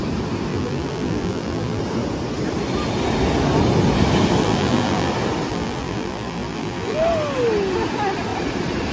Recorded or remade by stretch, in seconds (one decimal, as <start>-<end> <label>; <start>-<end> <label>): 0.0-0.5 recorded; 0.5-1.8 remade; 1.8-4.4 recorded; 4.4-5.1 remade; 5.1-5.5 recorded; 5.5-7.0 remade; 7.0-8.9 recorded